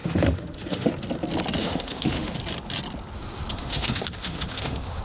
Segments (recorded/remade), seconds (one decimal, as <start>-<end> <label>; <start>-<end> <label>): 0.0-0.9 remade; 0.9-1.6 recorded; 1.6-2.4 remade; 2.4-3.5 recorded; 3.5-5.0 remade